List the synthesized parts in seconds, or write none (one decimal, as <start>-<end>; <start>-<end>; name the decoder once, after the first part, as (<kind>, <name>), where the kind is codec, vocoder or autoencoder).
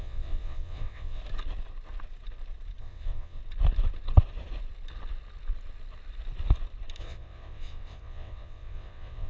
0.0-1.2 (vocoder, WaveNeXt); 2.8-3.4; 7.0-9.3